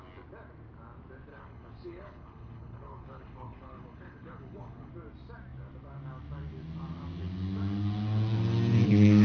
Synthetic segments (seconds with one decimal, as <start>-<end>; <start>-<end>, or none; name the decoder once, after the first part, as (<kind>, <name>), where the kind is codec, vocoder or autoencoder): 1.3-4.9 (codec, HILCodec)